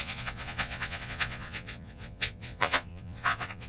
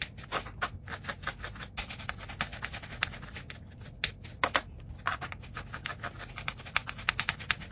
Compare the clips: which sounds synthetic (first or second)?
first